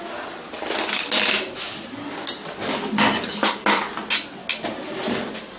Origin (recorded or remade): recorded